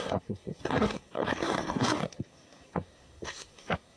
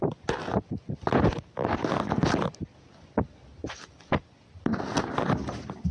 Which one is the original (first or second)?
second